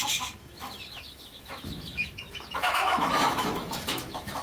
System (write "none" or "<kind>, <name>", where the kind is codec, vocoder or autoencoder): autoencoder, DAC-VAE